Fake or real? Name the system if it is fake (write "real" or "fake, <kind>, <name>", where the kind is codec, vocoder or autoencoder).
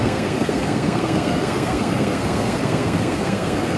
fake, codec, SNAC